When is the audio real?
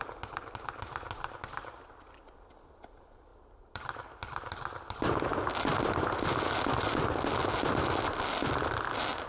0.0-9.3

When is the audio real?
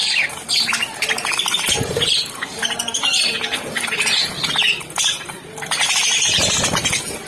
0.0-1.6; 4.2-5.1